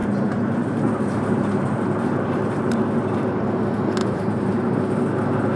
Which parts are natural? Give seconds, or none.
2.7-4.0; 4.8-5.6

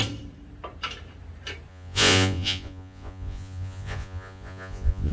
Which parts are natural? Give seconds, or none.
0.0-1.7

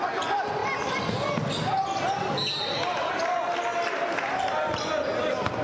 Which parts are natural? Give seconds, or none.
0.0-5.6

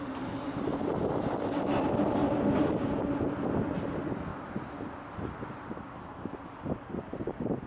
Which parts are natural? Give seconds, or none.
0.0-7.7

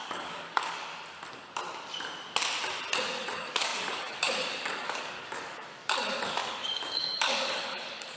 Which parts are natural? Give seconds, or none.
0.9-3.0

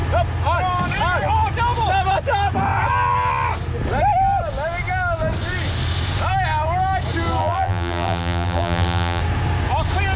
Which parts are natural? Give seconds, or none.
0.0-7.4; 9.2-10.2

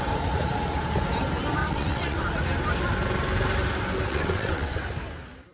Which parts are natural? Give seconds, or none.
0.0-1.6; 2.2-4.1; 4.8-5.5